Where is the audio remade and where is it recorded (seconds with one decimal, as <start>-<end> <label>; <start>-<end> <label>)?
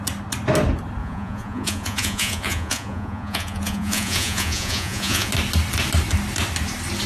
0.0-1.0 recorded; 1.0-5.3 remade; 5.3-7.1 recorded